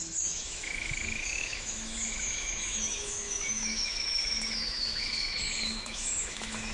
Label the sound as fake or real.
fake